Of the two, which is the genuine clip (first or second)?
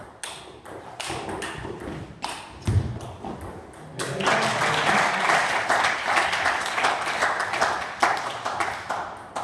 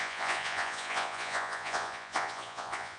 first